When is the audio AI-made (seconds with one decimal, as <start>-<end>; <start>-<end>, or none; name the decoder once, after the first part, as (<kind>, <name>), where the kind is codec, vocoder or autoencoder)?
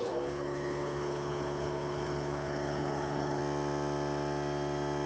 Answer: 0.0-3.4 (codec, HILCodec)